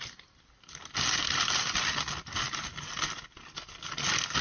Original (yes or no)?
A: yes